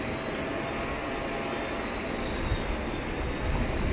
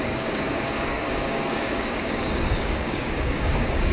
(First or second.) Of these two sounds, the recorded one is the first